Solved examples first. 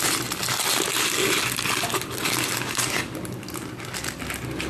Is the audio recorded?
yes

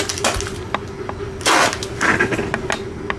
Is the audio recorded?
yes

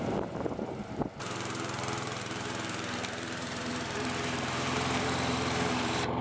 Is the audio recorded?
no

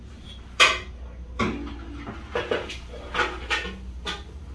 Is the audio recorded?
yes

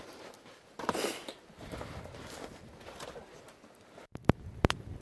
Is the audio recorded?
yes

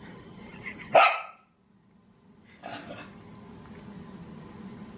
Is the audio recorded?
yes